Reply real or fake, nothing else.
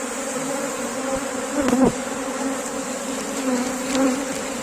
real